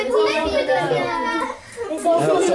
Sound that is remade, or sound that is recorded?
recorded